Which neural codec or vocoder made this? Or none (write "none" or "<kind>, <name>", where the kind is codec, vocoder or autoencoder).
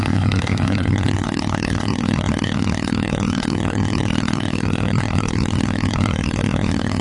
codec, SNAC